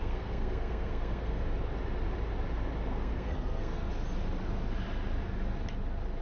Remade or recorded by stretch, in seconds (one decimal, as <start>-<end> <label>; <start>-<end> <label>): 0.0-1.4 remade; 1.4-2.9 recorded; 2.9-3.9 remade; 3.9-6.2 recorded